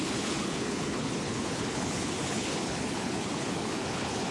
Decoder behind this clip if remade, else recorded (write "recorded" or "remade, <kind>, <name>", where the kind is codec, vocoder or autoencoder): remade, codec, HILCodec